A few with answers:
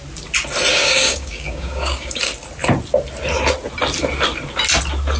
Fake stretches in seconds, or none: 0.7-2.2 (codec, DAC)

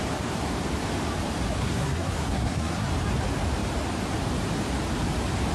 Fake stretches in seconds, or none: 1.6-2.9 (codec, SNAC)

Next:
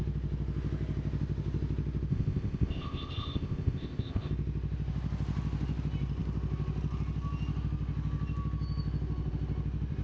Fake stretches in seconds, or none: 2.1-4.3 (codec, ZipCodec)

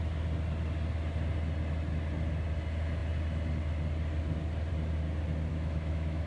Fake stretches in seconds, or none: 5.5-6.3 (autoencoder, DAC-VAE)

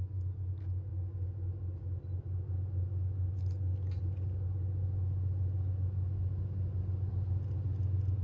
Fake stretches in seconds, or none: none